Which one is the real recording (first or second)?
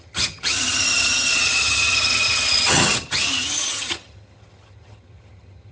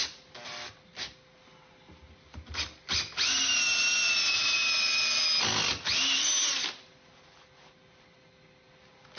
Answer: second